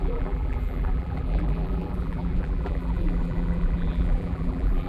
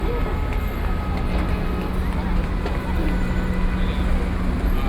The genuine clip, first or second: second